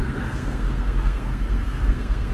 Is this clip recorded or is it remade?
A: remade